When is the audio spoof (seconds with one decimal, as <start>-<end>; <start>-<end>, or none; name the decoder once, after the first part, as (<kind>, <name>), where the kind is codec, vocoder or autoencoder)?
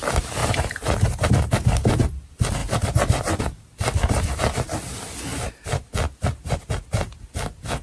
0.4-2.0 (vocoder, BigVGAN v2); 2.6-3.4; 5.3-5.9